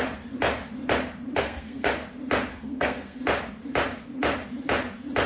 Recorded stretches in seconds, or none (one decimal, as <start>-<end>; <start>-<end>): 0.0-1.4; 1.9-2.5; 3.2-5.3

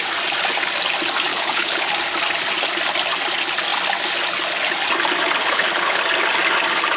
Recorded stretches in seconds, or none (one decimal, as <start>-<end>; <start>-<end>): 0.0-1.3; 1.9-5.4; 6.0-7.0

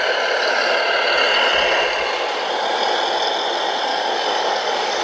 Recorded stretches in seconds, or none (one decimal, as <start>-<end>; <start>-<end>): 0.0-3.9